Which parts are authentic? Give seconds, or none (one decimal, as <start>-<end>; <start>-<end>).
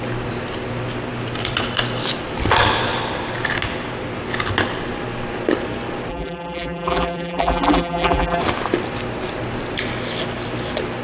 0.0-6.1; 8.4-11.0